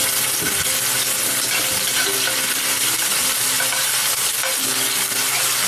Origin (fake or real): real